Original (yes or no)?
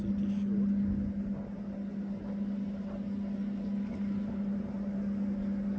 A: yes